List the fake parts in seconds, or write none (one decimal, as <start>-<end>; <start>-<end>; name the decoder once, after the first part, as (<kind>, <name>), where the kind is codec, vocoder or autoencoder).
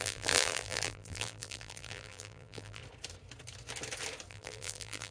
0.0-2.8 (vocoder, BigVGAN v2); 4.3-5.1